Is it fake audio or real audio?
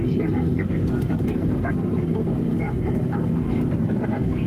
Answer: fake